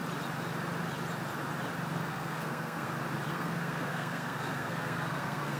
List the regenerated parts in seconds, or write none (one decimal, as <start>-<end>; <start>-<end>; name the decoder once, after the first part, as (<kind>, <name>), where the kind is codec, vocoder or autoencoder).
1.9-2.9 (codec, SNAC); 3.3-5.6